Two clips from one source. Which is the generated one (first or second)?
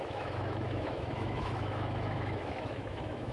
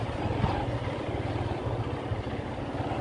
first